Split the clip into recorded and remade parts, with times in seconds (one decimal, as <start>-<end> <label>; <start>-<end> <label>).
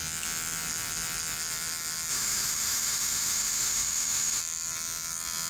0.0-2.1 recorded; 2.1-4.4 remade; 4.4-5.5 recorded